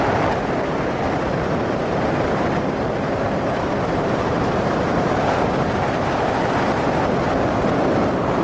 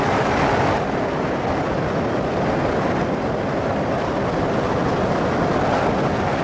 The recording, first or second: second